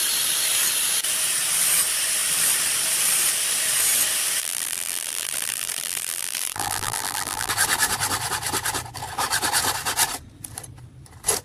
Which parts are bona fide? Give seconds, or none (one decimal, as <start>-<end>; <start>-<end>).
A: 0.0-4.4; 7.5-11.4